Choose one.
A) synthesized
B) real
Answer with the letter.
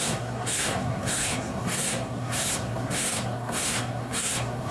A